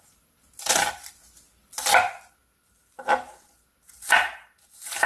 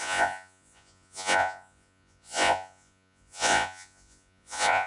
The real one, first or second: first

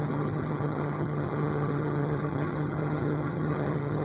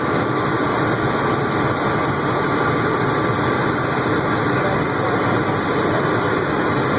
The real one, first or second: second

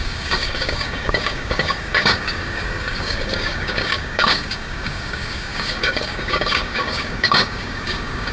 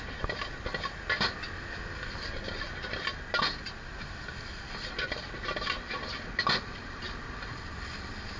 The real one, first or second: second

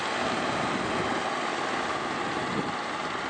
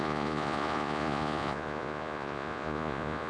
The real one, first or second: first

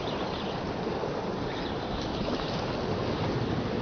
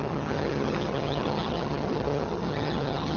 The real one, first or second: first